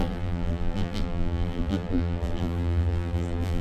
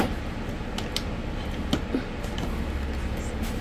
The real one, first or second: second